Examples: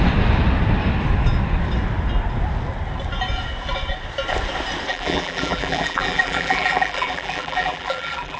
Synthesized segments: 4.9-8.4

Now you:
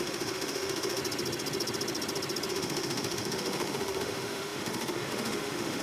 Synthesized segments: 0.0-1.0; 2.5-5.8

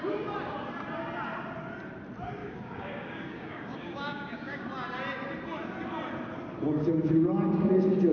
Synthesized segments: 2.4-4.7

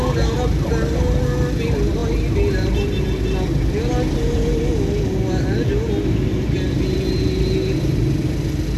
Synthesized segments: none

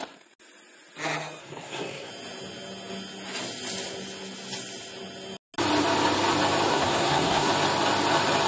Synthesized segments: 1.4-2.1; 6.7-7.5

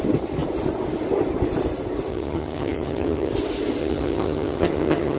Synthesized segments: 2.1-3.3; 3.8-5.2